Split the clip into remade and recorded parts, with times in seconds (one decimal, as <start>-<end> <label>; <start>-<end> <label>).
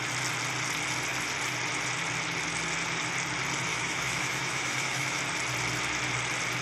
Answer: 0.0-3.7 recorded; 3.7-5.2 remade; 5.2-6.6 recorded